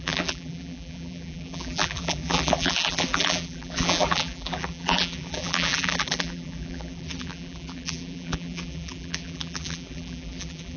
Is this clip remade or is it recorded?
remade